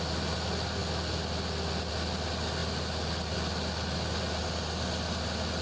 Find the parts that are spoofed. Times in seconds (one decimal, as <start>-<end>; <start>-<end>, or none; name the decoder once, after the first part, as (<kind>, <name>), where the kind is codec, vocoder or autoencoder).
none